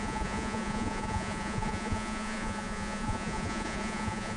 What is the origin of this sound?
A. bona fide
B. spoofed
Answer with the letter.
B